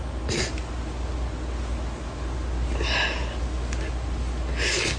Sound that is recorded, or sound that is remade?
recorded